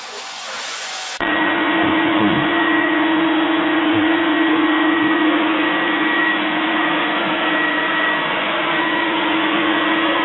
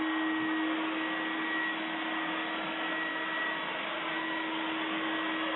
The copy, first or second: first